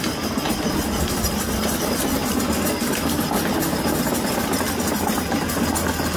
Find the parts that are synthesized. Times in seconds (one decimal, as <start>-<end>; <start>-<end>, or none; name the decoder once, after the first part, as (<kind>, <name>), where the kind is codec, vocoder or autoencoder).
0.0-2.2 (vocoder, BigVGAN v2)